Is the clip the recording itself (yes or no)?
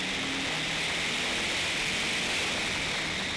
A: yes